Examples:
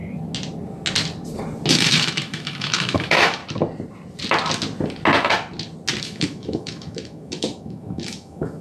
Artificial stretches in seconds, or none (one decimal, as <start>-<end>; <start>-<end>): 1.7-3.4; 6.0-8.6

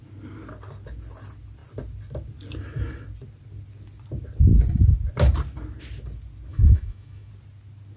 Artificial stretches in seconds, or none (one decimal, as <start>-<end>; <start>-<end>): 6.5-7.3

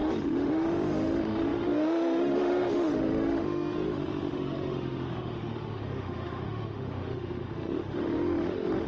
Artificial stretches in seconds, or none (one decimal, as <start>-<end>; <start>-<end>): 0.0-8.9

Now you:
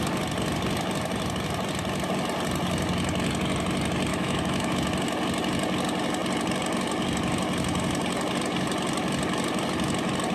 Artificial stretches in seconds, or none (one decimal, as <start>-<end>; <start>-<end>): 4.1-4.7

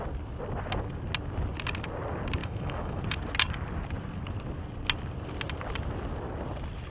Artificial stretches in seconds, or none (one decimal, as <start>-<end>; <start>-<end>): 2.4-3.0

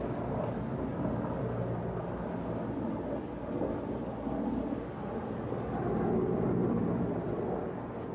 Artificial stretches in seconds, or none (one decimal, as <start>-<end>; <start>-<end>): none